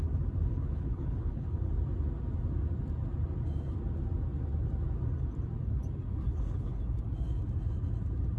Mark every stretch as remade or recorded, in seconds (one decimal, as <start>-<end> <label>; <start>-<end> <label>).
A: 0.0-0.5 recorded; 0.5-1.7 remade; 1.7-6.3 recorded; 6.3-6.8 remade; 6.8-8.4 recorded